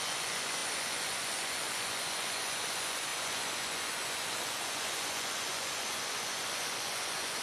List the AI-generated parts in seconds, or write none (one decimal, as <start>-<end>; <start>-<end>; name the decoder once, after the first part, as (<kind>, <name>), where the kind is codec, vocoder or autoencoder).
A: 0.0-7.4 (vocoder, Vocos)